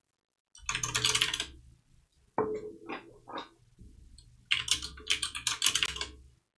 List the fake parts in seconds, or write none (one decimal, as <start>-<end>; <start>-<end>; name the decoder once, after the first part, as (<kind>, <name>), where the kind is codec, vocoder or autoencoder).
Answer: none